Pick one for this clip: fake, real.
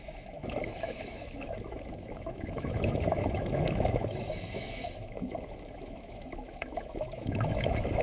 fake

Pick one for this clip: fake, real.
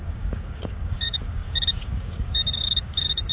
fake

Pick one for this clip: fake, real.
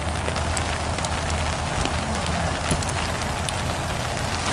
real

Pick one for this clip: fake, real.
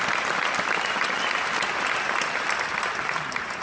real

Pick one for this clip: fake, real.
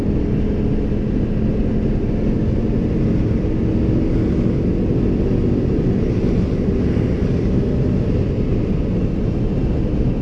real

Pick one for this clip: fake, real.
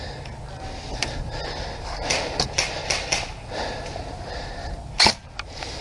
real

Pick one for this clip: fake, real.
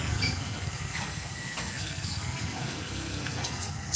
fake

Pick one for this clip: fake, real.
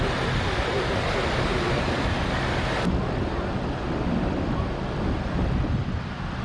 real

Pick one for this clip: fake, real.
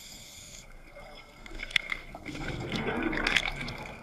fake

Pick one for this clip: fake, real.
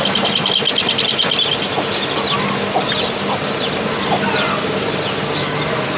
real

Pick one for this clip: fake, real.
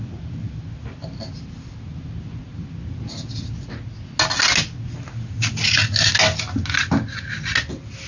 real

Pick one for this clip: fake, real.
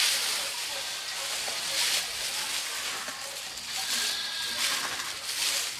real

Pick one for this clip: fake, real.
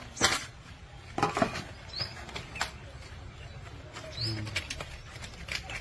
real